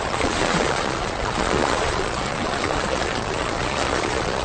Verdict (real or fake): fake